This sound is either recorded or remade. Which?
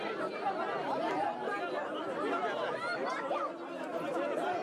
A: recorded